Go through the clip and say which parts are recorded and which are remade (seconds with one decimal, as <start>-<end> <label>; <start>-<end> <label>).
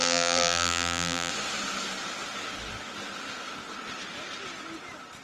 0.0-1.3 remade; 1.3-5.2 recorded